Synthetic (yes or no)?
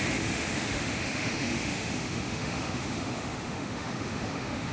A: yes